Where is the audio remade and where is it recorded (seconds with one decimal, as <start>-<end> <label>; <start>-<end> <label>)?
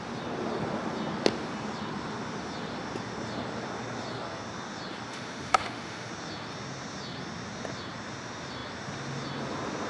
0.0-5.1 recorded; 5.1-6.1 remade; 6.1-9.9 recorded